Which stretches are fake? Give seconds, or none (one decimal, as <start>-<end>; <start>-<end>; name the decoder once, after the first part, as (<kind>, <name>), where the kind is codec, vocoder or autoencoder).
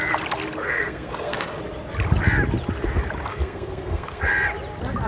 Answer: 0.6-1.6 (codec, SNAC); 3.3-4.2